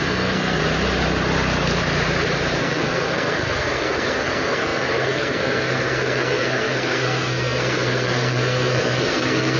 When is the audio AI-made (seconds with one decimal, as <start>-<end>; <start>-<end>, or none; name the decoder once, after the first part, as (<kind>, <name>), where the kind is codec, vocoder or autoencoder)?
0.0-0.6 (codec, SNAC); 2.6-9.6